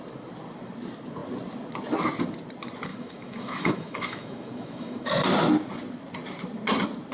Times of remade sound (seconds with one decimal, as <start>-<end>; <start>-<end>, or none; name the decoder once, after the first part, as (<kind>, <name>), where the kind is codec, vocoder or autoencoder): 2.9-5.1 (autoencoder, DAC-VAE)